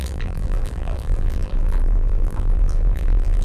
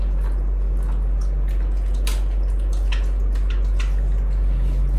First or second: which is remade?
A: first